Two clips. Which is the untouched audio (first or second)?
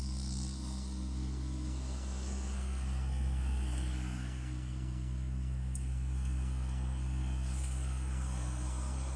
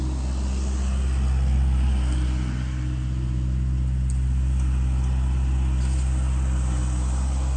second